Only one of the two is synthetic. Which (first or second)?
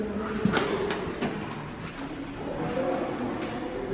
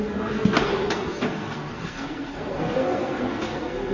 second